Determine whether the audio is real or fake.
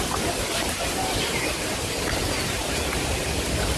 fake